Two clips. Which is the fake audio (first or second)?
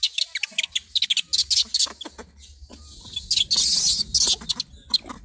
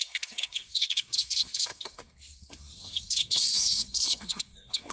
second